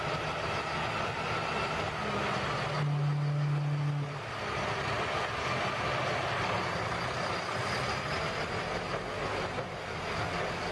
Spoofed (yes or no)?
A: no